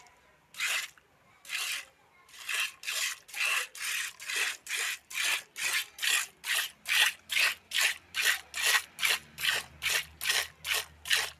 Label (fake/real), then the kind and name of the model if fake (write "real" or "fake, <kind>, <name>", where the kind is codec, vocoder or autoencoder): real